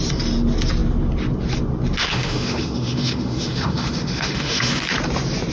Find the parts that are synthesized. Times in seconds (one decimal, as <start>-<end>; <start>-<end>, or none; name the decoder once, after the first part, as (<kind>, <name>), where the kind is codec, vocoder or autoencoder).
2.0-4.8 (autoencoder, DAC-VAE)